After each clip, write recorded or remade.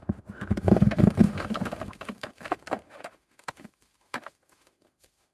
remade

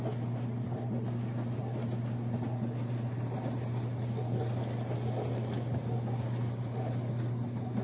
recorded